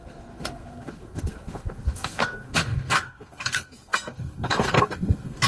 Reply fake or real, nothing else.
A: fake